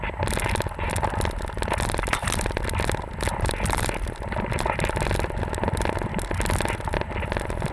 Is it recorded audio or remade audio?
recorded